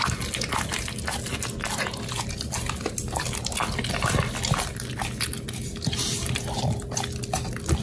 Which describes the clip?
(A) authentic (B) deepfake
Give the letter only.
A